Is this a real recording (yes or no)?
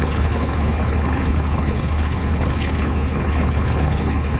no